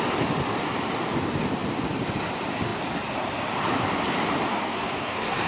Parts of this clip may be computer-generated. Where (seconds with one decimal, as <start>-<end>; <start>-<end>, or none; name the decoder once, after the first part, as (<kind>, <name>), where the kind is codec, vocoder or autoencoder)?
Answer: 4.5-5.5 (codec, SNAC)